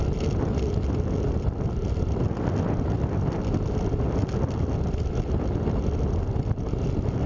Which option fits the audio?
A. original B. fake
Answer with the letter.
A